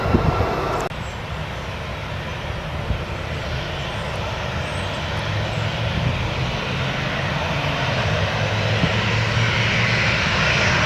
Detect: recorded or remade recorded